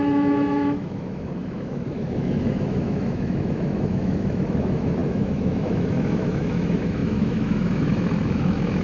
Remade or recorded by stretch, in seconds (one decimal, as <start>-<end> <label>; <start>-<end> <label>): 0.0-8.8 remade